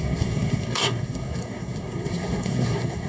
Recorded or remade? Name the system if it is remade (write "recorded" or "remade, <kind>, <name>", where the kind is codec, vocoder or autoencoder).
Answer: remade, codec, SNAC